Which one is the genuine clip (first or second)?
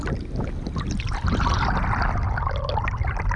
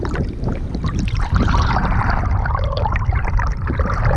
first